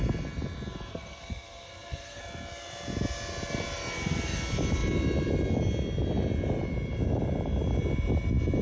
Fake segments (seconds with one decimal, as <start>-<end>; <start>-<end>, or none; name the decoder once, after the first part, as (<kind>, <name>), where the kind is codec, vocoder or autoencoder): 0.9-2.2 (codec, SNAC)